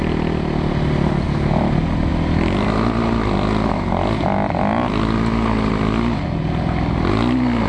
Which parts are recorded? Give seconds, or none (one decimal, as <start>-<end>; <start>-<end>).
0.0-7.7